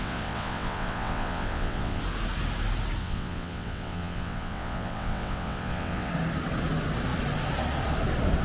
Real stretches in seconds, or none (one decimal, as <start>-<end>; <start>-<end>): 2.0-3.0; 6.1-8.4